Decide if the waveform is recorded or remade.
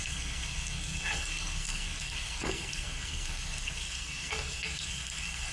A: remade